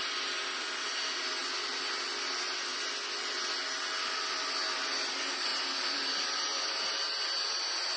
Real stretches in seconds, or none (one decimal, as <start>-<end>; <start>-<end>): 0.0-0.4; 0.9-5.5; 7.5-8.0